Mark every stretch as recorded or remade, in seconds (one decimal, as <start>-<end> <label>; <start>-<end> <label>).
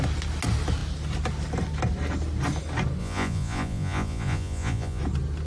0.0-3.0 recorded; 3.0-5.0 remade; 5.0-5.5 recorded